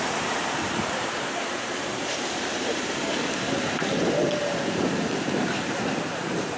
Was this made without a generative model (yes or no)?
no